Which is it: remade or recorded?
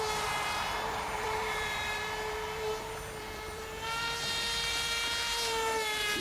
remade